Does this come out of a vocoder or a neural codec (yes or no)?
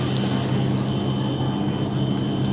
no